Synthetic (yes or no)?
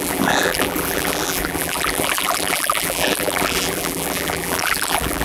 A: yes